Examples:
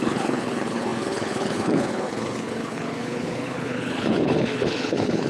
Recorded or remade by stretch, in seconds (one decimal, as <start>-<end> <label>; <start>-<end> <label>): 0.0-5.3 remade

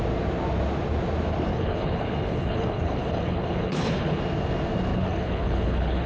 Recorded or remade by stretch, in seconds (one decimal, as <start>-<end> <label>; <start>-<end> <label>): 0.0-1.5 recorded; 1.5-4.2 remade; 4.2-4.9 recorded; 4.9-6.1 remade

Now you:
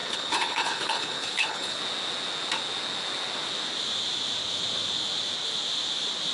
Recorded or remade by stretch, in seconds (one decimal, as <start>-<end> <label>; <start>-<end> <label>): 0.0-1.8 remade; 1.8-6.3 recorded